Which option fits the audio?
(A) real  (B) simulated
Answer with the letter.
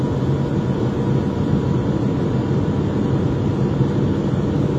A